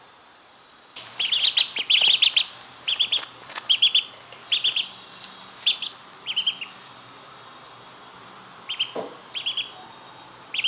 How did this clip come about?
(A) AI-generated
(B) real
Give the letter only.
B